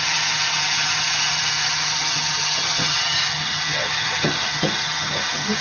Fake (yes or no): yes